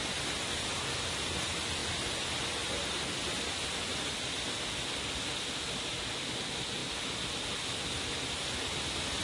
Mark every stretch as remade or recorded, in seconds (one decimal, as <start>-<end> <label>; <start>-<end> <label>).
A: 0.0-9.2 recorded